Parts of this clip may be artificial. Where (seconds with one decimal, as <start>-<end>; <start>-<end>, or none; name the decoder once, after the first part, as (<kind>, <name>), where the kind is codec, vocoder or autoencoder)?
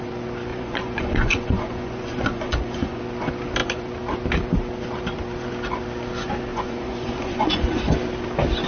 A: 0.5-3.0 (vocoder, Vocos); 6.5-7.8